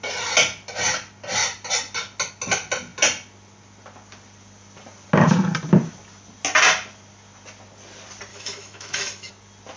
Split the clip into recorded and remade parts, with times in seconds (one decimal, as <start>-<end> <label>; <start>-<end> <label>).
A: 0.0-8.3 recorded; 8.3-9.3 remade; 9.3-9.8 recorded